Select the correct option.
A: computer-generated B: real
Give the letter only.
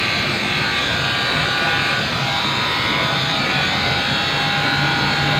A